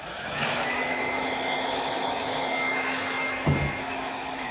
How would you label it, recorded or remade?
remade